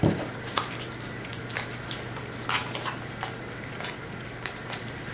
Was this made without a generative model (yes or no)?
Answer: yes